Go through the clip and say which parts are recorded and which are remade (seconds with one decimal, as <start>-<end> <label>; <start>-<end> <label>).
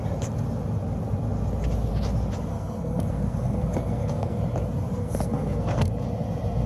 0.0-2.5 recorded; 2.5-4.4 remade; 4.4-5.0 recorded; 5.0-5.9 remade; 5.9-6.7 recorded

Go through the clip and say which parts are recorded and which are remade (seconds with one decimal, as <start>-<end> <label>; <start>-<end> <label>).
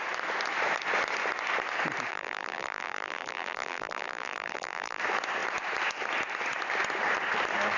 0.0-2.1 recorded; 2.1-5.0 remade; 5.0-7.8 recorded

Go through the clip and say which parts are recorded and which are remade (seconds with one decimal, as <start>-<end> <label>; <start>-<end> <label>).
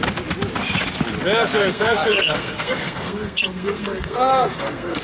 0.0-1.7 recorded; 1.7-5.0 remade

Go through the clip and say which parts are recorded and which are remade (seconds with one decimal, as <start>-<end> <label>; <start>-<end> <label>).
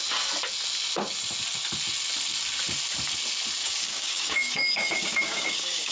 0.0-3.6 recorded; 3.6-5.9 remade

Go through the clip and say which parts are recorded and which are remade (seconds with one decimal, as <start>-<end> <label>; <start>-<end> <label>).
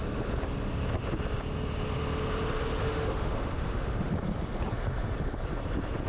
0.0-2.8 recorded; 2.8-4.1 remade; 4.1-6.1 recorded